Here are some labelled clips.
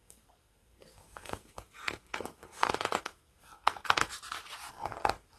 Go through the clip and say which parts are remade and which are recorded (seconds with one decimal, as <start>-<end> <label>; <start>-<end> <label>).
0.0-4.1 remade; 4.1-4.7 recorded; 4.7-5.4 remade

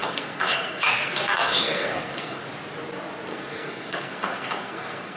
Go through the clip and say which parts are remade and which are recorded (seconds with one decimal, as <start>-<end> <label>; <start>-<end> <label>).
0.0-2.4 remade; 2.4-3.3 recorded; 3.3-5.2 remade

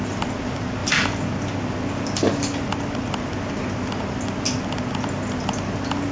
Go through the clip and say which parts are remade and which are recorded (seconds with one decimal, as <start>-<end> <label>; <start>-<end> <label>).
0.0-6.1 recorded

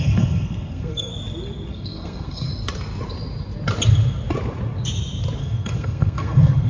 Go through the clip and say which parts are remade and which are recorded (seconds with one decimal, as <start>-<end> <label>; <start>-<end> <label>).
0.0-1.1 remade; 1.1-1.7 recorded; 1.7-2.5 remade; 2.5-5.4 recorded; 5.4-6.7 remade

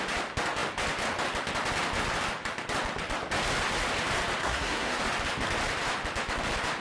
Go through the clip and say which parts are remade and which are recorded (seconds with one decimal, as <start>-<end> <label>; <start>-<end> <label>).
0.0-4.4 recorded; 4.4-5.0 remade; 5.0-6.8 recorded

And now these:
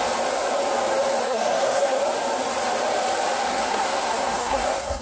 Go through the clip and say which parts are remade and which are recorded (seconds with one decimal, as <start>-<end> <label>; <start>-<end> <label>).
0.0-1.2 recorded; 1.2-2.0 remade; 2.0-3.5 recorded; 3.5-5.0 remade